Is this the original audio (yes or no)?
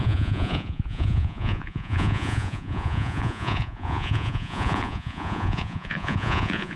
no